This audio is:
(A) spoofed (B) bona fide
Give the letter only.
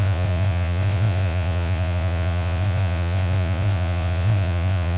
A